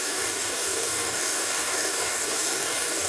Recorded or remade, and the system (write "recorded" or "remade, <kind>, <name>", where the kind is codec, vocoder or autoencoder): remade, codec, DAC